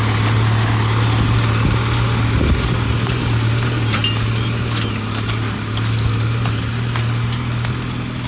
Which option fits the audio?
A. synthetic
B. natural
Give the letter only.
B